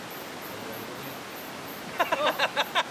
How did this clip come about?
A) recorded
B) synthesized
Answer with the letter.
A